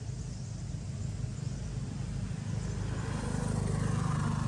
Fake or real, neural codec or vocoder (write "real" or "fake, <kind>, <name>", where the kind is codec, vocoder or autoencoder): real